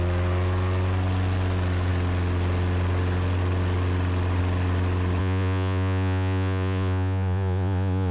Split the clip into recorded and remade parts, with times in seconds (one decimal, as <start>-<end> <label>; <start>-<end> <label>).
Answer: 0.0-5.2 recorded; 5.2-8.1 remade